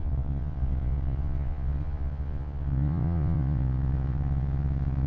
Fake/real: fake